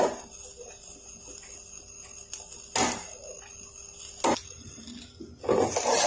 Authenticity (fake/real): real